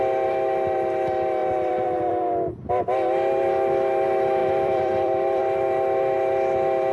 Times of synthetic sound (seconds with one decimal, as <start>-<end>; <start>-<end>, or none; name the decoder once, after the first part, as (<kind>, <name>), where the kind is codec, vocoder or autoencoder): 1.4-2.7 (vocoder, BigVGAN v2); 4.4-5.4